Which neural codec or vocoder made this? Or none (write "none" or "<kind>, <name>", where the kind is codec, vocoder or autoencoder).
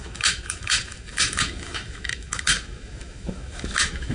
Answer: autoencoder, DAC-VAE